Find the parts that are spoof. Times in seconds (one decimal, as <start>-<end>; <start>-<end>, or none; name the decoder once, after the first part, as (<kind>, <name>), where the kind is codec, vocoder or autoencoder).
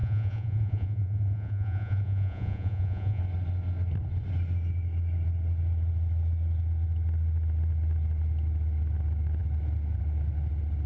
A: 0.0-3.2 (vocoder, Vocos)